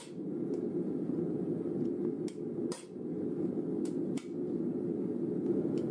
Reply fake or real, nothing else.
real